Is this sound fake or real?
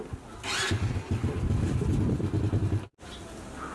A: real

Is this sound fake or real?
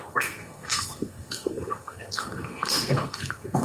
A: fake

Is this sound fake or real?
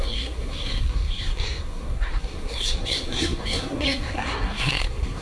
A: fake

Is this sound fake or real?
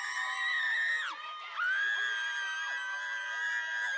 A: real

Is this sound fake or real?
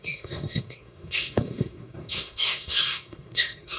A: fake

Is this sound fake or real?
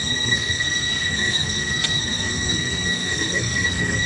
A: fake